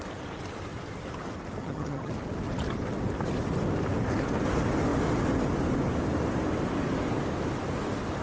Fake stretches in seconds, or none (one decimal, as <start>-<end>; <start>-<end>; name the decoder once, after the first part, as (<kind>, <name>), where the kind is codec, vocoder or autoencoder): 1.6-2.1 (vocoder, HiFi-GAN)